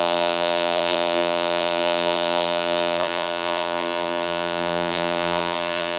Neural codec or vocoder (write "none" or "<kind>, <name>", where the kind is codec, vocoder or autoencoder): vocoder, BigVGAN v2